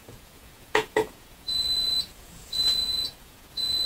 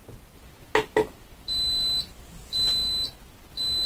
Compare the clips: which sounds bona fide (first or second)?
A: second